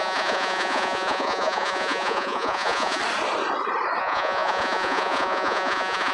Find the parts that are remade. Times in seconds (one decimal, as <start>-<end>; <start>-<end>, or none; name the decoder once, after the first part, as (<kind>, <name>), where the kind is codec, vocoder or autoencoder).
0.0-3.0 (vocoder, Vocos); 4.0-6.1